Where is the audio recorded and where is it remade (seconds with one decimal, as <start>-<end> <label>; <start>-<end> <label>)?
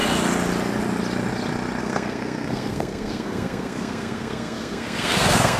0.0-1.8 recorded; 1.8-5.6 remade